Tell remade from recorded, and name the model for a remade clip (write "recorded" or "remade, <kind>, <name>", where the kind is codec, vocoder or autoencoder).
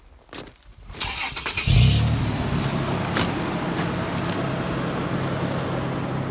recorded